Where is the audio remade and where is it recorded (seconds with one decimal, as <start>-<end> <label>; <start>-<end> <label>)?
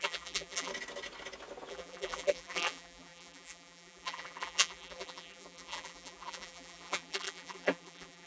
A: 0.0-0.7 remade; 0.7-1.7 recorded; 1.7-8.3 remade